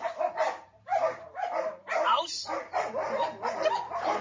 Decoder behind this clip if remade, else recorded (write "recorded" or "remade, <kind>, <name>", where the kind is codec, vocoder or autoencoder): recorded